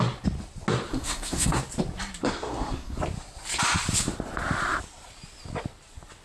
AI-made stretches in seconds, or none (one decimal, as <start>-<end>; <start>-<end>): 0.9-1.6; 2.2-3.0